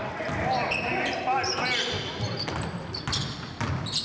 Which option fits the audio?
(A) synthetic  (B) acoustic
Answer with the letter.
B